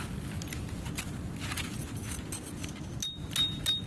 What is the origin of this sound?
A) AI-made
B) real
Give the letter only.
B